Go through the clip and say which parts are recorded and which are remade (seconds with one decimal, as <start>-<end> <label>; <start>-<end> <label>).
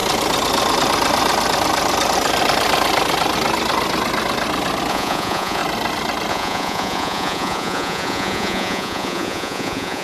0.0-4.9 recorded; 4.9-5.6 remade; 5.6-6.3 recorded; 6.3-10.0 remade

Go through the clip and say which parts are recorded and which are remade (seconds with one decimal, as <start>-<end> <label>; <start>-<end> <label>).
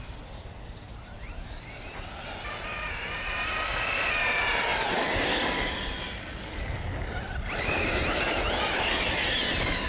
0.0-9.9 recorded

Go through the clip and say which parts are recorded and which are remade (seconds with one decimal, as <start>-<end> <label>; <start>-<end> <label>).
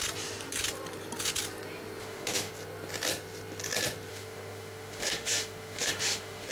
0.0-2.0 recorded; 2.0-2.5 remade; 2.5-4.1 recorded; 4.1-6.5 remade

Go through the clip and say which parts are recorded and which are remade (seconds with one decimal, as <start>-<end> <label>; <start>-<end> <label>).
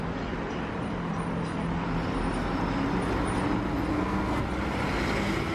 0.0-3.9 recorded; 3.9-4.4 remade; 4.4-5.5 recorded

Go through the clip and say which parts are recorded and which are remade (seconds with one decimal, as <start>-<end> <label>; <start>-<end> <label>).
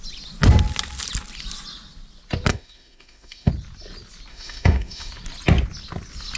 0.0-2.5 recorded; 2.5-3.5 remade; 3.5-4.3 recorded; 4.3-5.1 remade; 5.1-6.4 recorded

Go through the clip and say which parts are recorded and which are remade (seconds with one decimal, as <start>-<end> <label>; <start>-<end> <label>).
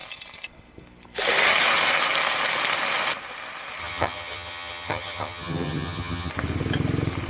0.0-3.8 recorded; 3.8-6.3 remade; 6.3-7.3 recorded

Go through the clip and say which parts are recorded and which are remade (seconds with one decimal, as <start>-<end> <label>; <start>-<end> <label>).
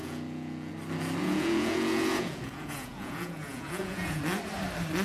0.0-0.7 remade; 0.7-1.2 recorded; 1.2-4.2 remade; 4.2-5.0 recorded